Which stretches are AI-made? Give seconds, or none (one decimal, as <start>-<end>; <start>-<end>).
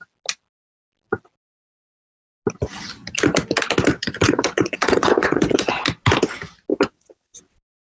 3.9-5.8; 6.7-7.4